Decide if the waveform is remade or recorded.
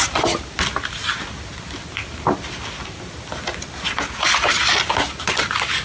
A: recorded